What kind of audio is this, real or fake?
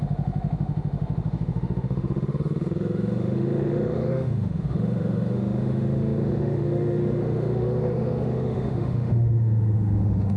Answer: fake